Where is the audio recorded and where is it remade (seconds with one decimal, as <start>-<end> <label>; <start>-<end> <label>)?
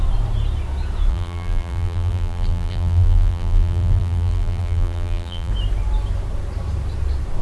0.0-1.1 recorded; 1.1-5.5 remade; 5.5-7.4 recorded